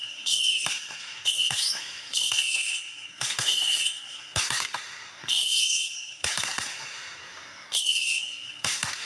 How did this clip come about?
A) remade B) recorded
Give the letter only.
A